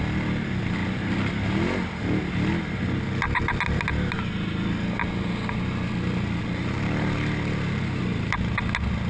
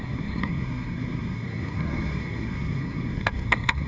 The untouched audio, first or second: first